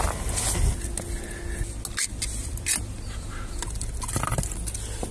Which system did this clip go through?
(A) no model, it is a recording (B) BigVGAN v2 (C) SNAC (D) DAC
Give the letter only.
A